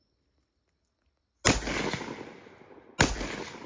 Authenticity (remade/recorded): recorded